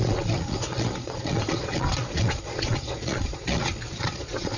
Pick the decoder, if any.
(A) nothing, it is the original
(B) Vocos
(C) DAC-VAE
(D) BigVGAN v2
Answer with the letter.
B